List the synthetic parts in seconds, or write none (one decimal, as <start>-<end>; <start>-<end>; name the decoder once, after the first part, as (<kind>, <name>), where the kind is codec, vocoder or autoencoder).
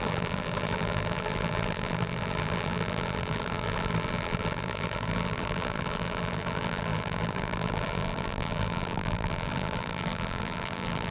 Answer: 0.0-11.1 (vocoder, BigVGAN v2)